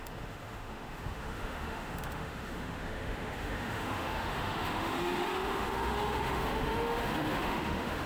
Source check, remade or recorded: remade